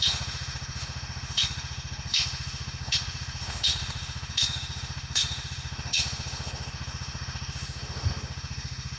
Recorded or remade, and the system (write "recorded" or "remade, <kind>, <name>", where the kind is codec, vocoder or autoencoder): remade, autoencoder, DAC-VAE